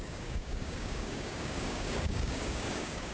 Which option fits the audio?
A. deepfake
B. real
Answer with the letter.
A